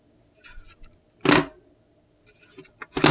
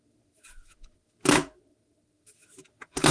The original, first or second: first